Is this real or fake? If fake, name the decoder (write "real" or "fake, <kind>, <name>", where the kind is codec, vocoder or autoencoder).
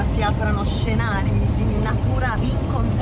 real